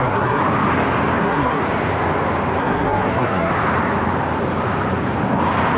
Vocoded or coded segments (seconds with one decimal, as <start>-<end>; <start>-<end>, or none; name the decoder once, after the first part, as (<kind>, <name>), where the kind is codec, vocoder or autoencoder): 0.0-0.4 (codec, SNAC); 1.2-1.6; 2.6-3.5